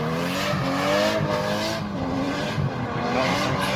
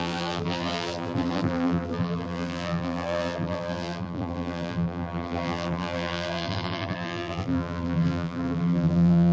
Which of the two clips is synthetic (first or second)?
second